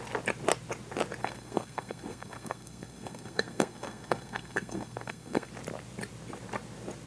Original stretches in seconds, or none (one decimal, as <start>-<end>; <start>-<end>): 0.0-1.2; 5.5-7.1